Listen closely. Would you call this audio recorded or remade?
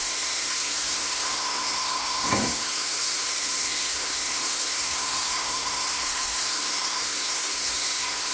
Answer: remade